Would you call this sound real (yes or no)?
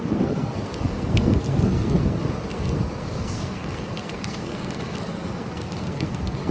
no